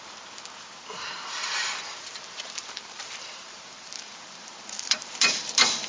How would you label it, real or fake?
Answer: fake